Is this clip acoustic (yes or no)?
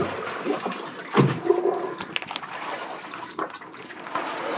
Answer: yes